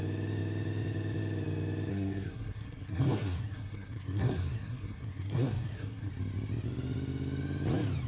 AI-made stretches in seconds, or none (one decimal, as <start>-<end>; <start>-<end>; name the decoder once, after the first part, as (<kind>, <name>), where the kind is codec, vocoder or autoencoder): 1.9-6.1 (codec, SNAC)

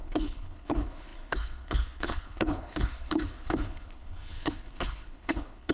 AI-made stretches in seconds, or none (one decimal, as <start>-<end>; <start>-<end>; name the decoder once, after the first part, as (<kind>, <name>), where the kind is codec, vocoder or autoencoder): 0.0-5.7 (codec, HILCodec)

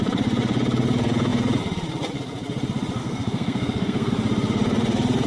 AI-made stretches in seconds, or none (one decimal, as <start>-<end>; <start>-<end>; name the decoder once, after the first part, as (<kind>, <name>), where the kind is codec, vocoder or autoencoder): 3.0-4.1 (codec, SNAC)